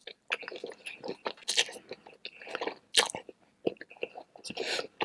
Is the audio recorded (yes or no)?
yes